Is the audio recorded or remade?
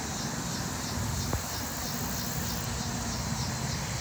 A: recorded